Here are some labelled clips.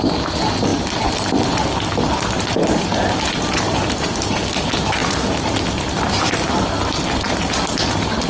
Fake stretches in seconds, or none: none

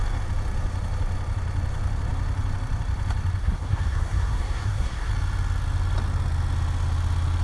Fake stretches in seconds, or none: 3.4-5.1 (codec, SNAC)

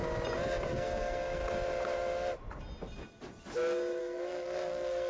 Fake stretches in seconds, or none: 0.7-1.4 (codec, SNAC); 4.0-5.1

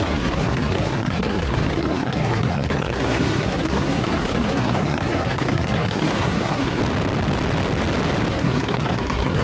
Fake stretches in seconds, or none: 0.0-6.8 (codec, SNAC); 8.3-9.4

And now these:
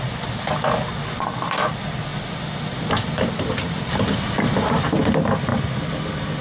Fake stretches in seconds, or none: none